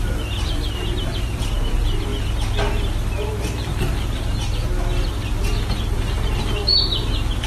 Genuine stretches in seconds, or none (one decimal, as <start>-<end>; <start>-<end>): 2.1-5.7; 6.6-7.5